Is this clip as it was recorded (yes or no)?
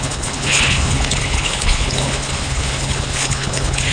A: no